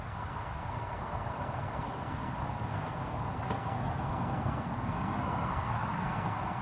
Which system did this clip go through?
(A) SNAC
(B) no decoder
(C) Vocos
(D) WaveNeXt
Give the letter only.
A